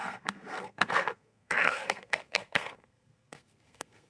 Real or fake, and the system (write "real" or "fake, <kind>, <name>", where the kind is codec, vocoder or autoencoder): fake, codec, SNAC